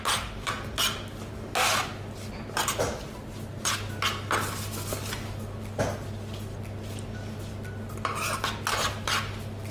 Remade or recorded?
recorded